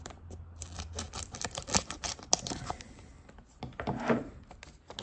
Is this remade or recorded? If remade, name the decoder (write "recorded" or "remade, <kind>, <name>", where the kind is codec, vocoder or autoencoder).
recorded